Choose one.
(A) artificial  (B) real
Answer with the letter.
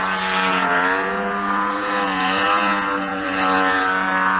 A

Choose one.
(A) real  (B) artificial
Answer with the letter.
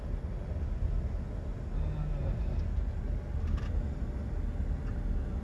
A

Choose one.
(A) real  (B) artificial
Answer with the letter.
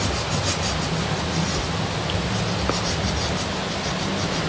A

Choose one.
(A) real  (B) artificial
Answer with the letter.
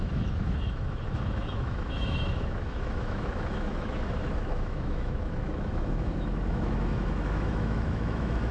B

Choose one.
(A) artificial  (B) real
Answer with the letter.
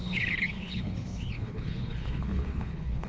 A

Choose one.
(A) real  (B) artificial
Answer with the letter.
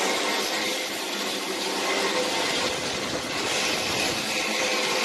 A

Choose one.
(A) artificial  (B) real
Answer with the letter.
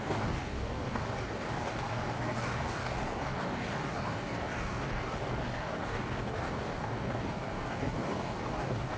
A